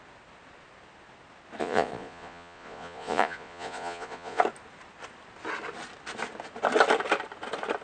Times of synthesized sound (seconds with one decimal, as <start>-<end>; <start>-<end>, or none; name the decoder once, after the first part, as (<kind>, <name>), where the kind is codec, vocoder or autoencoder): 1.6-4.4 (vocoder, Vocos)